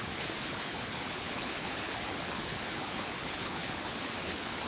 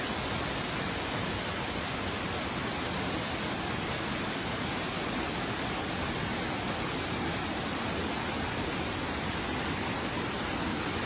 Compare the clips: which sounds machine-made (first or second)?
first